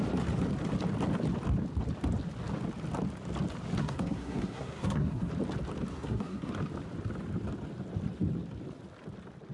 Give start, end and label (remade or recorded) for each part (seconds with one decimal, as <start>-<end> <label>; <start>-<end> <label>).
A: 0.0-3.8 recorded; 3.8-5.3 remade; 5.3-5.9 recorded; 5.9-6.5 remade; 6.5-9.5 recorded